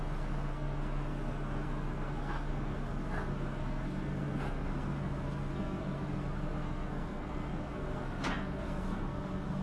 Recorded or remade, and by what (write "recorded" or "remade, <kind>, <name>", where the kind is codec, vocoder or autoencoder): remade, codec, SNAC